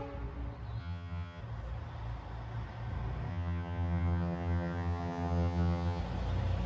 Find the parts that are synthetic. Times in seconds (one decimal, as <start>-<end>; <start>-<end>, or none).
0.8-1.4; 3.3-6.0